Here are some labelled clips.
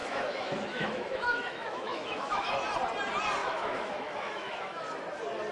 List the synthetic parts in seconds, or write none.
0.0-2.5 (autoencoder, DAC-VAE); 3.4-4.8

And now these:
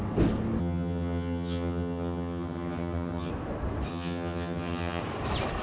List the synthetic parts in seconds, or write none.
0.6-3.3 (vocoder, HiFi-GAN); 3.9-5.0

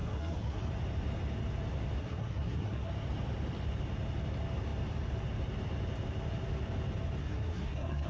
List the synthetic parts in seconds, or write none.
0.0-0.6 (codec, SNAC); 2.0-2.9; 7.2-8.1

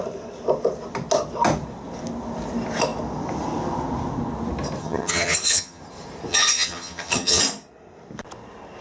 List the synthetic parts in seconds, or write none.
4.8-5.8 (vocoder, HiFi-GAN); 6.3-7.4